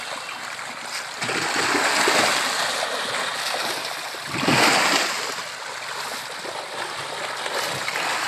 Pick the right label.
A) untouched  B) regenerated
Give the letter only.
A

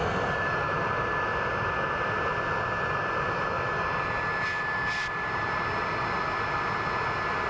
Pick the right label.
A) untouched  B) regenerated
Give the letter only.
A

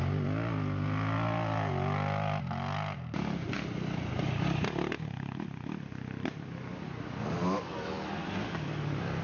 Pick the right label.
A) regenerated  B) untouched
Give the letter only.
B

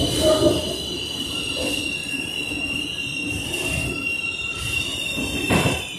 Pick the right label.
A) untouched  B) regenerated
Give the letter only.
A